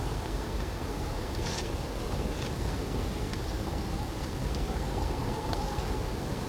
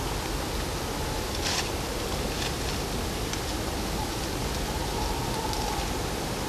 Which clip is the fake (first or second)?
first